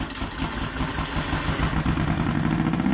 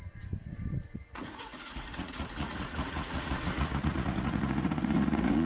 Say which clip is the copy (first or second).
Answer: second